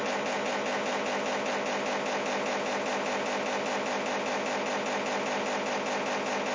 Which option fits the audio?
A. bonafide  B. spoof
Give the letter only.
A